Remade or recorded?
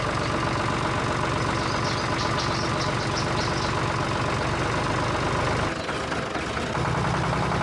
recorded